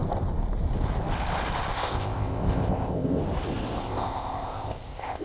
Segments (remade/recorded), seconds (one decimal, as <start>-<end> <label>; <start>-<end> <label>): 0.0-1.7 recorded; 1.7-3.2 remade; 3.2-3.8 recorded; 3.8-5.2 remade